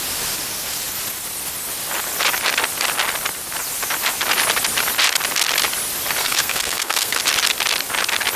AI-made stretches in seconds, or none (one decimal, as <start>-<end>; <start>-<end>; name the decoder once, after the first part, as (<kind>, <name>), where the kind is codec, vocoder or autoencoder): 6.2-7.2 (codec, SNAC)